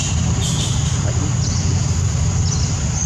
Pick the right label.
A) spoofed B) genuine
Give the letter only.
B